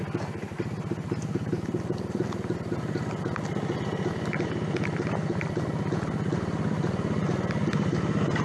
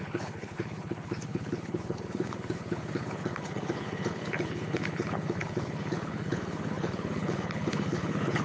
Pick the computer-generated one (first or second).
second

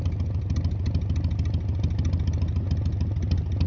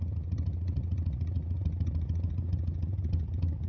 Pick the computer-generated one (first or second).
second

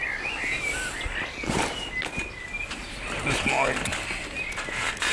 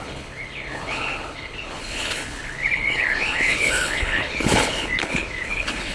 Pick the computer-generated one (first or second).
second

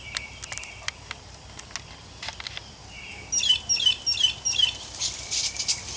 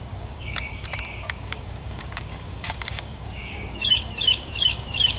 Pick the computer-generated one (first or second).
second